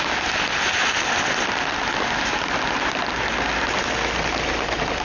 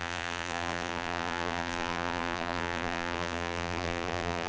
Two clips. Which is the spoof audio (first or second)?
second